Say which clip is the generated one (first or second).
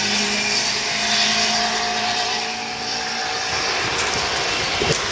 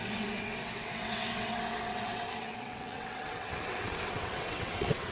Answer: second